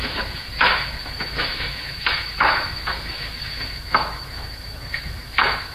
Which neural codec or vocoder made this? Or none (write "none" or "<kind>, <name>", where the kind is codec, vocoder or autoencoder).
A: autoencoder, DAC-VAE